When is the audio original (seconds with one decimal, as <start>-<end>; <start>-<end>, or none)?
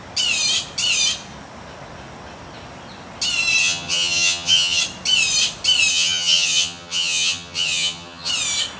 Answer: 0.0-3.6; 4.8-5.9; 8.3-8.8